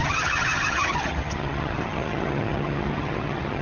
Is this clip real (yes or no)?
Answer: no